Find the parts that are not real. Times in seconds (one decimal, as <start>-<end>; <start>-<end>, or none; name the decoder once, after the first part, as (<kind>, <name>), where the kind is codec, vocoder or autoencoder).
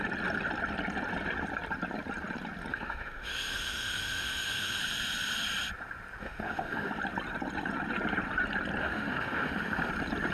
2.7-4.8 (autoencoder, DAC-VAE); 6.2-6.9; 8.8-9.9